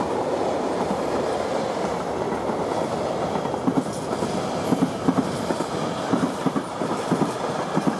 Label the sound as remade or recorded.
recorded